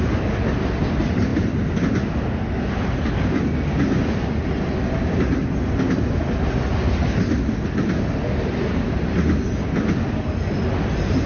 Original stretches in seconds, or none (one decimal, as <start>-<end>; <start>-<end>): 0.0-11.3